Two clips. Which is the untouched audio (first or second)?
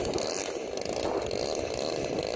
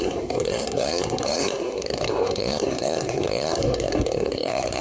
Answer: first